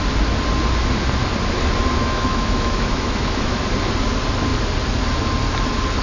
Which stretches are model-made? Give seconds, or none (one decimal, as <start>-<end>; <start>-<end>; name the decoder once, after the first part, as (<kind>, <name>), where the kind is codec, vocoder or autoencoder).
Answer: 2.0-3.6 (autoencoder, DAC-VAE)